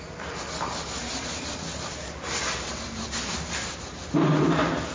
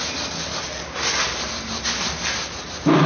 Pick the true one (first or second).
second